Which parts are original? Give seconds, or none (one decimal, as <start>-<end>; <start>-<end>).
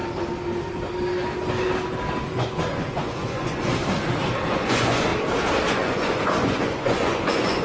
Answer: 0.0-2.2; 3.7-4.5; 5.1-5.7